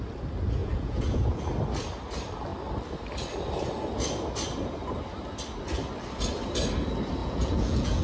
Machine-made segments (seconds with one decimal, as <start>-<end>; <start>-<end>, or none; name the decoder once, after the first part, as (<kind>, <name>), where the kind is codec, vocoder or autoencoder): 0.6-1.4 (vocoder, Vocos); 7.2-8.0